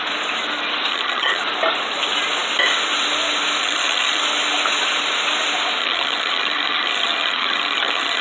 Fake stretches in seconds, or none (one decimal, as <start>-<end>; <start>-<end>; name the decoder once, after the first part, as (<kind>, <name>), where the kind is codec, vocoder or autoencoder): 0.9-1.4 (vocoder, HiFi-GAN); 3.6-4.2; 5.8-8.2